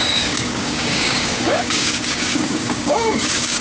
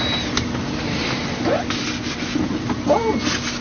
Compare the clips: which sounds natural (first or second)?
second